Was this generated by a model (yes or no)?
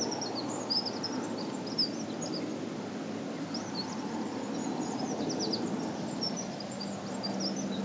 no